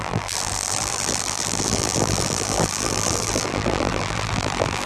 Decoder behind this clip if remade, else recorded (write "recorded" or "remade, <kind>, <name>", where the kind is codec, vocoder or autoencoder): remade, vocoder, BigVGAN v2